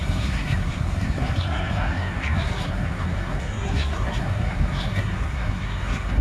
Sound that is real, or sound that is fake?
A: fake